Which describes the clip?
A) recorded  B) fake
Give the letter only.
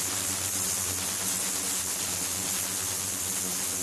A